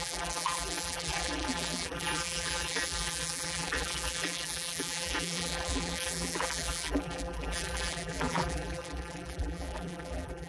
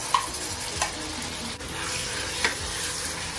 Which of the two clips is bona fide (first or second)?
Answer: second